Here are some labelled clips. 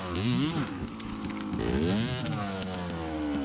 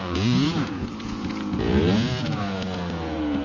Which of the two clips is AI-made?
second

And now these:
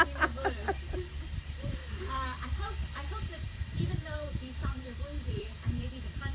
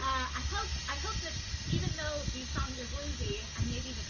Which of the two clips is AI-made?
first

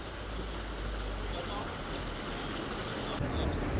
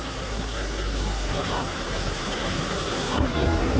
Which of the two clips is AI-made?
second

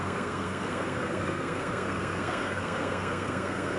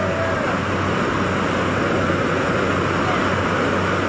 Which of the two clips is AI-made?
first